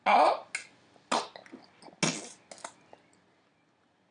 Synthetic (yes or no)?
no